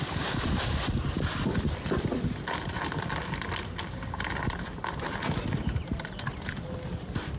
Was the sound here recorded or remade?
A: recorded